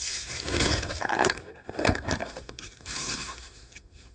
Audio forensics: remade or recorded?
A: remade